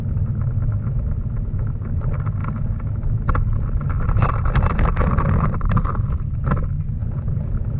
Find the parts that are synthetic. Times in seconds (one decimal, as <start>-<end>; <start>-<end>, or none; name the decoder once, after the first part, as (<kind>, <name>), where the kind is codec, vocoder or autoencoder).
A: 2.4-2.9 (vocoder, Vocos); 7.0-7.8